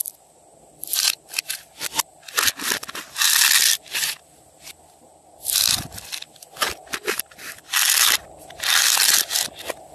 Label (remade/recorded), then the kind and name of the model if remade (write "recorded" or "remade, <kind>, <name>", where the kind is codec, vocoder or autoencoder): recorded